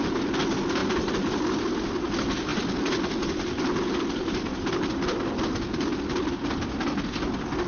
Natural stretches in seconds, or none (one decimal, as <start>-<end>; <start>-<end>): 0.0-0.8; 1.4-7.7